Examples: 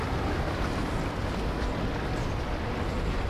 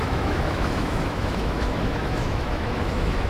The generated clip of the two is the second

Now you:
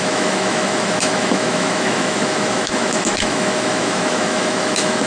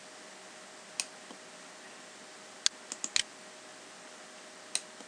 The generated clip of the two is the first